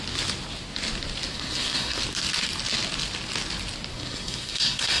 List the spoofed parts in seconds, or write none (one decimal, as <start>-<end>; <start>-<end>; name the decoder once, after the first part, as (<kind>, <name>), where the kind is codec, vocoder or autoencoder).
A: 1.3-2.0 (codec, SNAC); 3.9-5.0